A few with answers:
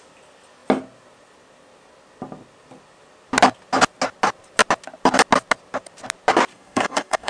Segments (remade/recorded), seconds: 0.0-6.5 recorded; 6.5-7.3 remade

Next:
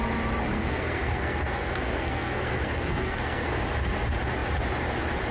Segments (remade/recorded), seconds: 0.0-0.5 recorded; 0.5-3.5 remade; 3.5-5.3 recorded